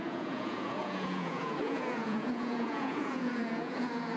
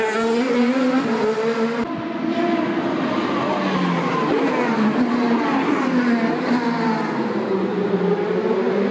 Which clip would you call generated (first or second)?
first